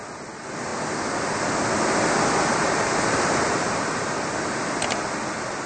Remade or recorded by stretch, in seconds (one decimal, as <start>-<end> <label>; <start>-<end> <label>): 0.0-5.7 recorded